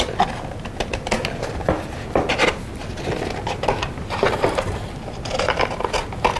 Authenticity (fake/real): real